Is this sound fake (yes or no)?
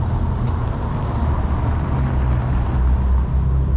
no